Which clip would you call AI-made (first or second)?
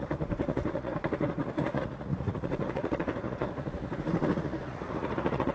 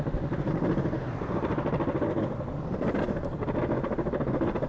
first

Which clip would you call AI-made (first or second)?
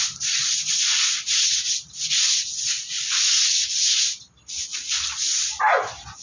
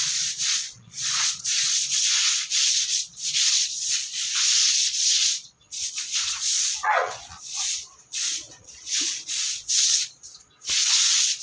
second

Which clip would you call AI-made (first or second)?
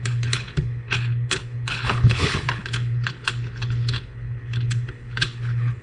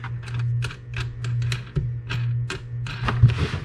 first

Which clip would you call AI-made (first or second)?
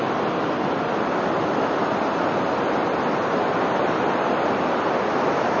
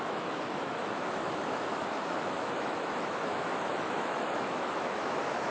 second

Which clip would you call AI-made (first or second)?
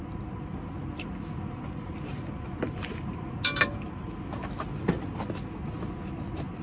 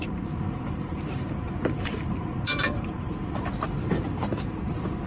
second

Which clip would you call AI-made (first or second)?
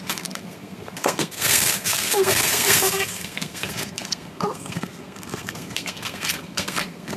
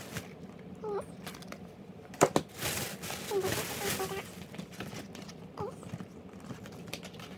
first